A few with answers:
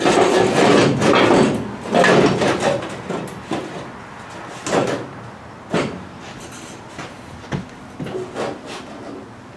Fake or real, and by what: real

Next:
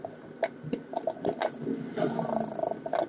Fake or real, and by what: real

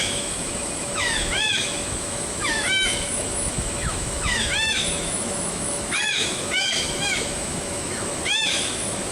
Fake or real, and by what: fake, autoencoder, DAC-VAE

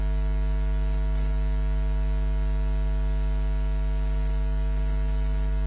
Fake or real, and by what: real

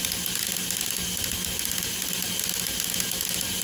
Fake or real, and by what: real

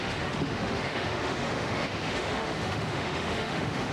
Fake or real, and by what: fake, autoencoder, DAC-VAE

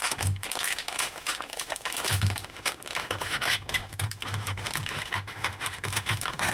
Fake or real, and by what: fake, autoencoder, DAC-VAE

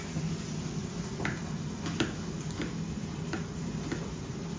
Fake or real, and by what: real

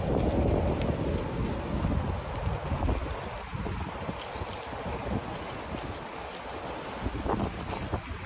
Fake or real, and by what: real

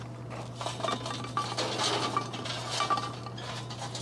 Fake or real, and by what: real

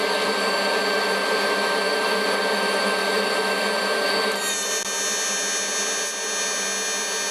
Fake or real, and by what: real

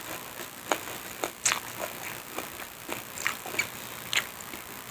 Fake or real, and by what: real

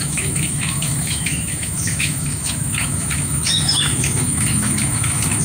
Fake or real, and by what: fake, autoencoder, DAC-VAE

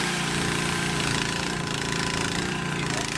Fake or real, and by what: real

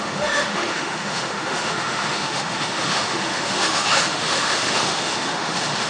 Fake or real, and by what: fake, autoencoder, DAC-VAE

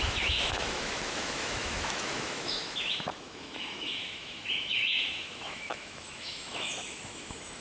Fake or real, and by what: fake, autoencoder, DAC-VAE